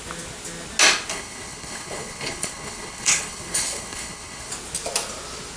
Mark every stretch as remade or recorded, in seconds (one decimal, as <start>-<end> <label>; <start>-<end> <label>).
0.0-1.1 recorded; 1.1-4.5 remade; 4.5-5.6 recorded